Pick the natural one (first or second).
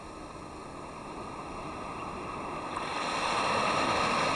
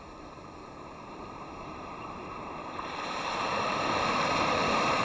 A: first